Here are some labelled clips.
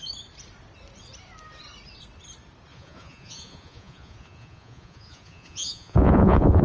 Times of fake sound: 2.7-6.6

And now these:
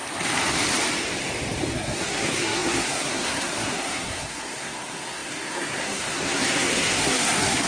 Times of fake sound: 1.7-7.7